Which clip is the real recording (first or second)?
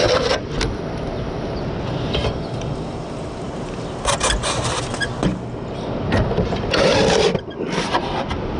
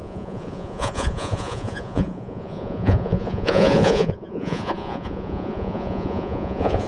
first